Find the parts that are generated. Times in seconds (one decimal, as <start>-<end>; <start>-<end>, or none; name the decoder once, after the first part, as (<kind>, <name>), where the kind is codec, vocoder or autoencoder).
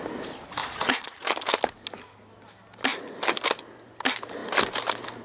0.6-1.3 (vocoder, Vocos)